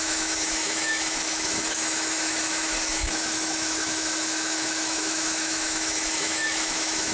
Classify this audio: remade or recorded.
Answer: remade